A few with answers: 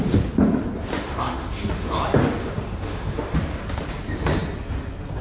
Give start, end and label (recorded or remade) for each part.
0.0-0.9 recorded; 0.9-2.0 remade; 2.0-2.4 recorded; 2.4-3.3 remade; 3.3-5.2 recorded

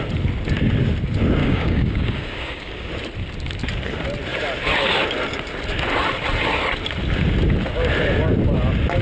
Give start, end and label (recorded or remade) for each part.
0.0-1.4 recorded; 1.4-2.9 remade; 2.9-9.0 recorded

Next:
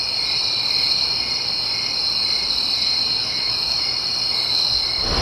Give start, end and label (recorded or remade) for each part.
0.0-3.2 recorded; 3.2-3.8 remade; 3.8-5.2 recorded

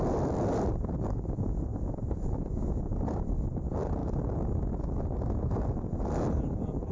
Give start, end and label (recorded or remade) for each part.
0.0-6.9 recorded

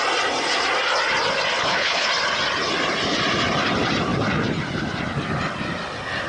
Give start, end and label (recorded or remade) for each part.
0.0-1.6 recorded; 1.6-2.1 remade; 2.1-6.3 recorded

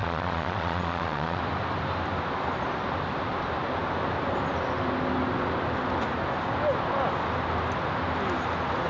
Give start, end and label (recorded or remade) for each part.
0.0-1.4 remade; 1.4-8.9 recorded

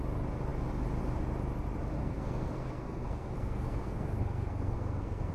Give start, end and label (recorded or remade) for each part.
0.0-2.0 recorded; 2.0-5.3 remade

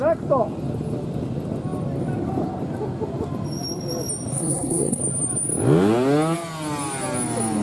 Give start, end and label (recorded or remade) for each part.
0.0-4.3 recorded; 4.3-5.0 remade; 5.0-7.6 recorded